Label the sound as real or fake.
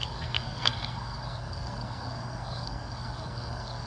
fake